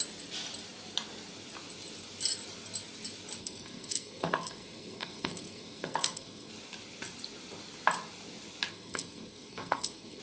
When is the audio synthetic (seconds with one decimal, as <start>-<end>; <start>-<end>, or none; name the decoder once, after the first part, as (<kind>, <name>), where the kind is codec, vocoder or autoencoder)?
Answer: 3.4-6.5 (codec, SNAC); 8.7-10.2